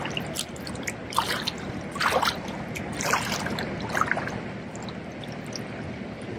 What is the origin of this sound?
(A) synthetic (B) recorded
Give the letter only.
B